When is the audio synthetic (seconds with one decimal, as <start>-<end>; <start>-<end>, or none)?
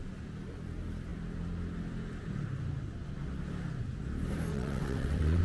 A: 4.5-5.4